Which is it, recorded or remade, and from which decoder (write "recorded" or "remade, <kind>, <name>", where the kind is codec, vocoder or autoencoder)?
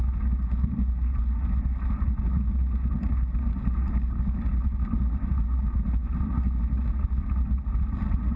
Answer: recorded